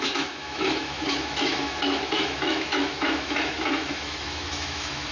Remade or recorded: remade